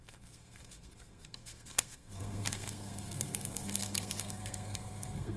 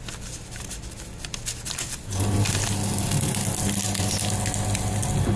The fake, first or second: first